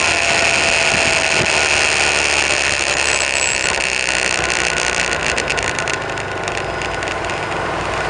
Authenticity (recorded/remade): recorded